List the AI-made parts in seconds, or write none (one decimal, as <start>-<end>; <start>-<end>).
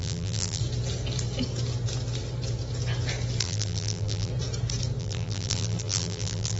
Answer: 0.0-0.6; 3.4-4.3; 5.0-6.6